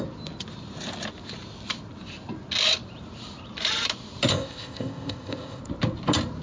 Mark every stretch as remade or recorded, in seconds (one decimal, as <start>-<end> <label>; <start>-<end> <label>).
0.0-4.3 recorded; 4.3-5.6 remade; 5.6-6.4 recorded